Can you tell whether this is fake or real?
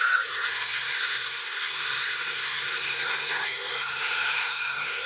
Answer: fake